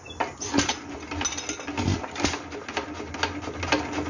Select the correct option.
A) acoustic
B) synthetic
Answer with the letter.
A